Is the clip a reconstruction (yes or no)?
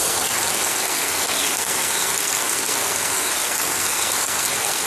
yes